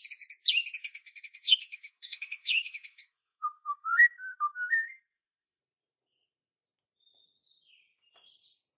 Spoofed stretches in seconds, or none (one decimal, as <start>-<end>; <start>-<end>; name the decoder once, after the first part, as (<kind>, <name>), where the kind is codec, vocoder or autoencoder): 0.8-5.6 (codec, SNAC)

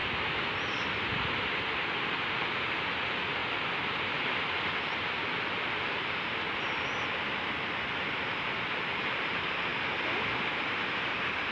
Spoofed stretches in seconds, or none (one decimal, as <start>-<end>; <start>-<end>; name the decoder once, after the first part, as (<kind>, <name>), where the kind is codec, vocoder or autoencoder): 1.7-3.4 (vocoder, BigVGAN v2); 8.3-9.7; 10.4-11.5

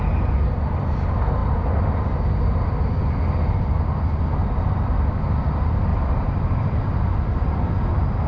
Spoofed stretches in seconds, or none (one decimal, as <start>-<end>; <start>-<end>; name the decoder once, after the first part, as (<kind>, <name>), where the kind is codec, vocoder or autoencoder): 5.9-7.7 (vocoder, BigVGAN v2)

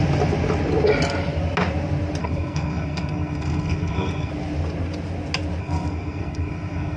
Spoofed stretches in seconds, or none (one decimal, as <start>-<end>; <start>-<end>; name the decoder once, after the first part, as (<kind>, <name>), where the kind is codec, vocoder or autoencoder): 2.2-4.3 (codec, SNAC); 5.6-7.0